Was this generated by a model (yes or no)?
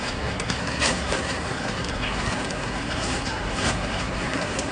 yes